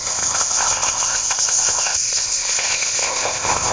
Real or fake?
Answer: fake